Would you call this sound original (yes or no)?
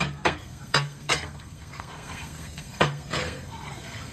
no